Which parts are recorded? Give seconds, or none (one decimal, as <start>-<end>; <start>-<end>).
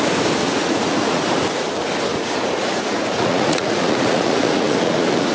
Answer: 0.0-0.5; 1.2-2.1